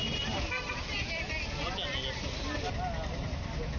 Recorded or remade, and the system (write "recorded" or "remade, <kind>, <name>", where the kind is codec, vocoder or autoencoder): recorded